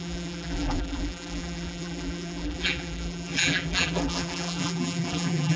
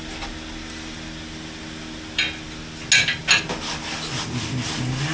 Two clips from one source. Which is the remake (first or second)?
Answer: first